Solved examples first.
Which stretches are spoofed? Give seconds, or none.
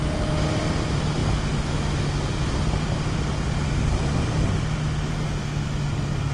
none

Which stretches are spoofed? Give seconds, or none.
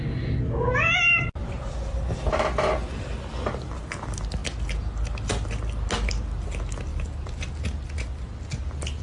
6.9-7.5 (vocoder, BigVGAN v2)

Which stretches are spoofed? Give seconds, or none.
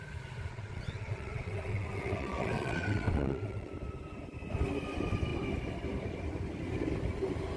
0.5-3.7 (vocoder, WaveNeXt)